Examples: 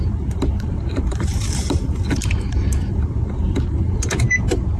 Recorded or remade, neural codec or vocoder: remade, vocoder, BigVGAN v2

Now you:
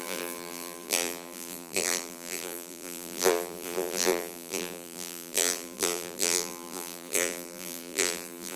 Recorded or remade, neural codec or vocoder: remade, vocoder, BigVGAN v2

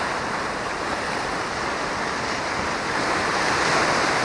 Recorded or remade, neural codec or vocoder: recorded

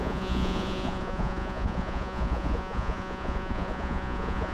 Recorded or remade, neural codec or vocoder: remade, vocoder, Vocos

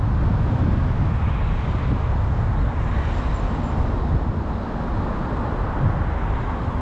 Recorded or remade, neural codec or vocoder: recorded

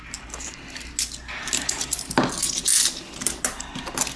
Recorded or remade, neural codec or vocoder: recorded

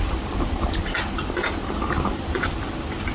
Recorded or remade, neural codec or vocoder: recorded